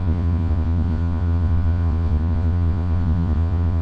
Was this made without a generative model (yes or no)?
no